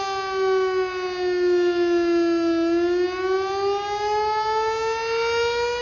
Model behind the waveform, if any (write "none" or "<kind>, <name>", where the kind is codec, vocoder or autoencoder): none